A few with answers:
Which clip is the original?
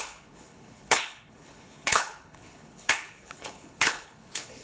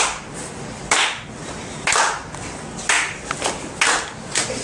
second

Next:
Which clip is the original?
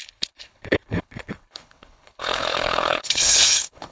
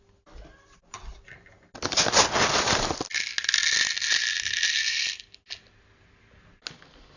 second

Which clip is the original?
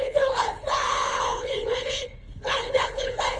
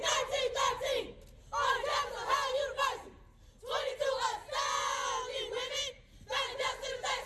second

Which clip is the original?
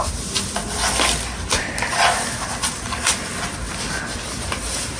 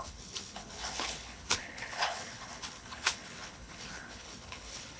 first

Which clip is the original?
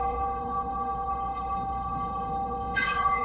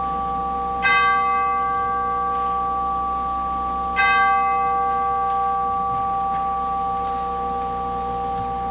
second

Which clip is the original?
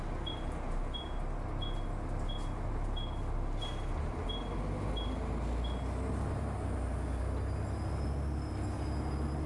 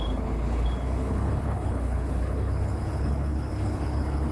first